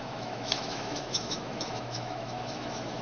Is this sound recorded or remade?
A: remade